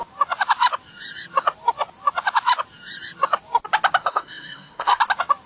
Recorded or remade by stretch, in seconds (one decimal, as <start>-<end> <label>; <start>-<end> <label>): 0.0-4.0 recorded; 4.0-5.0 remade; 5.0-5.5 recorded